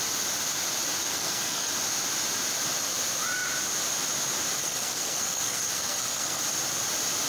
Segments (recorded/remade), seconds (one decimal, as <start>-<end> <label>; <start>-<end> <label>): 0.0-1.1 recorded; 1.1-1.7 remade; 1.7-4.6 recorded; 4.6-6.4 remade; 6.4-7.3 recorded